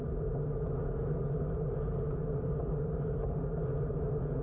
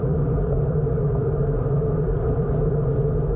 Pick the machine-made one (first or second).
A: second